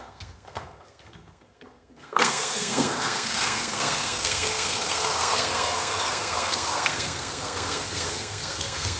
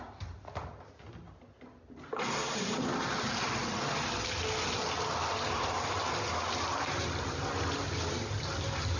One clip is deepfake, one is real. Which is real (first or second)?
second